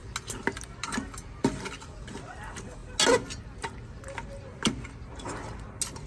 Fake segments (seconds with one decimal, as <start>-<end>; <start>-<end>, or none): none